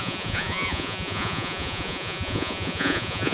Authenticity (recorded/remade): remade